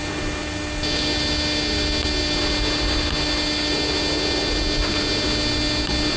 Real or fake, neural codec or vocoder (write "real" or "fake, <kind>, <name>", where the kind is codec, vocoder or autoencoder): real